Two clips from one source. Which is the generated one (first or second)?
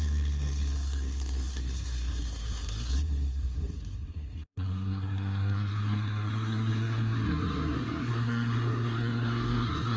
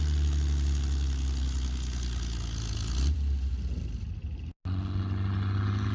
first